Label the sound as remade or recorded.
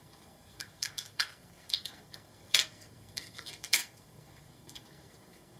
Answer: remade